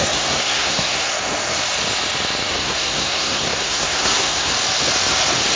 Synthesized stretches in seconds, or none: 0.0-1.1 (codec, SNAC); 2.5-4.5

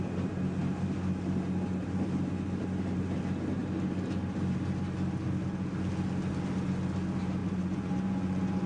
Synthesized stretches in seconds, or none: 7.4-8.7 (vocoder, Vocos)

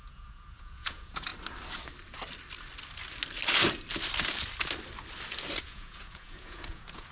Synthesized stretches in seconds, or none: 0.0-1.3 (vocoder, Vocos); 5.6-7.1

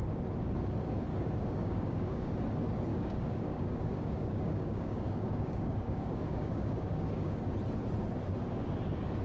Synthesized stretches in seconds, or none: 1.1-2.3 (codec, DAC); 2.9-7.4